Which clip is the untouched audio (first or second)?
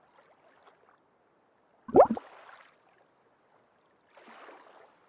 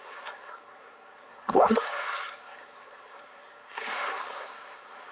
first